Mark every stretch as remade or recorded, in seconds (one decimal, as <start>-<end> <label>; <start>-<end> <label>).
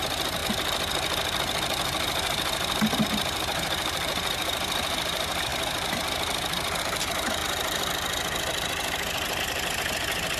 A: 0.0-0.4 remade; 0.4-3.0 recorded; 3.0-7.4 remade; 7.4-9.4 recorded; 9.4-10.4 remade